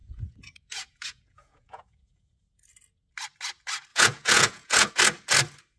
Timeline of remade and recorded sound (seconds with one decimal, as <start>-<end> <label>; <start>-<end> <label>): 0.0-2.4 remade; 2.4-3.9 recorded; 3.9-4.9 remade; 4.9-5.8 recorded